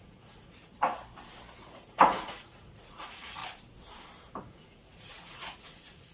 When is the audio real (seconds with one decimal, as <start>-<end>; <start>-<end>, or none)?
0.7-1.6; 3.4-4.4